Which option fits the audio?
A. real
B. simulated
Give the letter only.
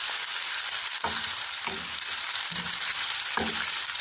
A